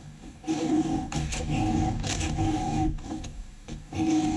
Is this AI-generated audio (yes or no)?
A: yes